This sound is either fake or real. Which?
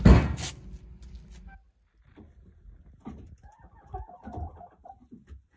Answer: real